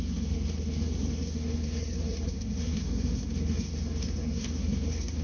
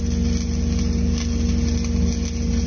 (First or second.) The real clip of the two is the second